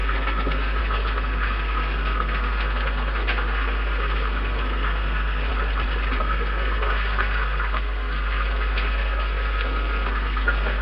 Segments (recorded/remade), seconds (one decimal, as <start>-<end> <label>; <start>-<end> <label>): 0.0-5.5 remade; 5.5-6.2 recorded; 6.2-10.8 remade